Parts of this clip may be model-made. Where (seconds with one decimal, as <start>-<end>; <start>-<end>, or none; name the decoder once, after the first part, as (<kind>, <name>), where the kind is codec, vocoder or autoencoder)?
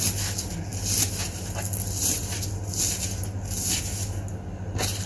none